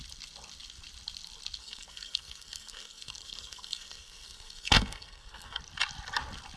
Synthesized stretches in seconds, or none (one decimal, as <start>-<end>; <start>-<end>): 1.6-5.6